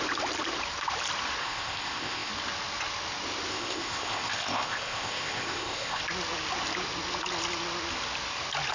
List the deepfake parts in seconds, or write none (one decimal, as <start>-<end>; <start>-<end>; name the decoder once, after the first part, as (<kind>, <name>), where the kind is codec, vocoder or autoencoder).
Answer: 1.4-2.3 (codec, ZipCodec); 3.5-6.0